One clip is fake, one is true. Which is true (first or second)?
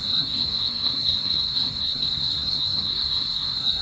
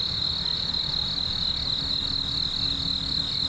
second